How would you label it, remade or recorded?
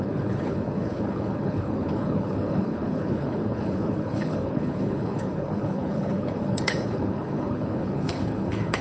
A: remade